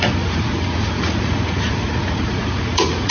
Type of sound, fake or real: fake